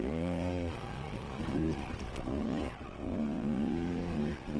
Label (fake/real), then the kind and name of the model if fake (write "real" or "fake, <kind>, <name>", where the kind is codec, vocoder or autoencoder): fake, vocoder, Vocos